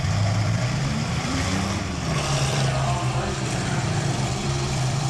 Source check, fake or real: fake